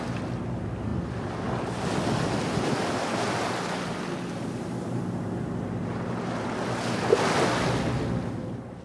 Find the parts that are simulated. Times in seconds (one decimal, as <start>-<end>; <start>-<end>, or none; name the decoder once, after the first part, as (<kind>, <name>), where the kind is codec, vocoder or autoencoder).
none